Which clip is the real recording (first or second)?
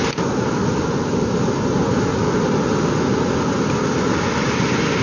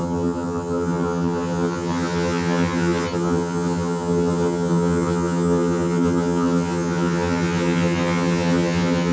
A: first